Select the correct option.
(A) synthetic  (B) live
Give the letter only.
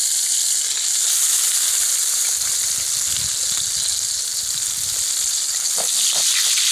B